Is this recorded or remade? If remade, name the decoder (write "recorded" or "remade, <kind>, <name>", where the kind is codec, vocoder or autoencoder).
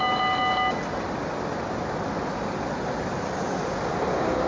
recorded